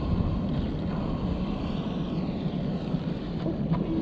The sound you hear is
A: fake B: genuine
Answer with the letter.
B